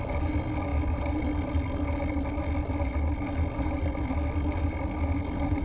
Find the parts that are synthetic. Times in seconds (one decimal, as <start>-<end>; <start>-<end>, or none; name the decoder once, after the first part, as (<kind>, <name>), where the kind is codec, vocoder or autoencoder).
none